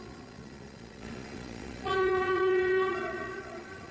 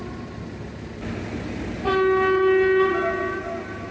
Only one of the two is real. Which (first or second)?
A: second